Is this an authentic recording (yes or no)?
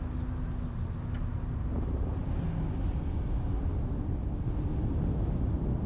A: yes